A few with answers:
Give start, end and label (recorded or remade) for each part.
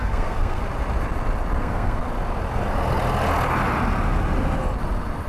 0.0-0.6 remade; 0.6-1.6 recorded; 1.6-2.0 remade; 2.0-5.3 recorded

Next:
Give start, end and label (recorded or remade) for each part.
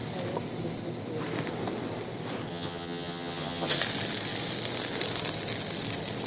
0.0-2.5 recorded; 2.5-3.8 remade; 3.8-6.3 recorded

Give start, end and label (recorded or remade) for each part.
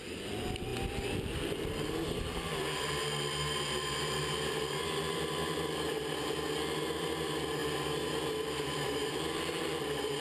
0.0-10.2 remade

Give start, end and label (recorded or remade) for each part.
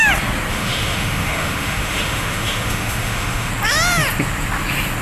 0.0-0.5 recorded; 0.5-3.5 remade; 3.5-5.0 recorded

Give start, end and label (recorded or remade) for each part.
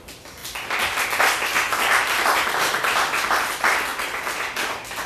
0.0-5.1 recorded